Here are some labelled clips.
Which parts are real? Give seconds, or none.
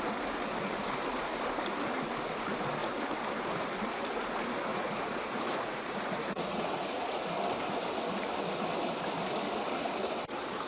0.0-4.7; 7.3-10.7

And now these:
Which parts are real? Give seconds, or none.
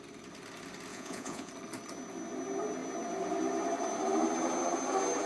0.0-0.9; 1.5-5.3